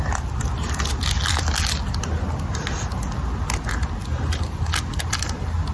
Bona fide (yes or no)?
yes